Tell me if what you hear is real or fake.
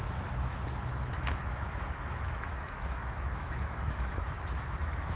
fake